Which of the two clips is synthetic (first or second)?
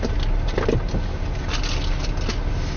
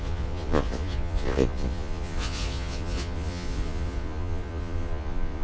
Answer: second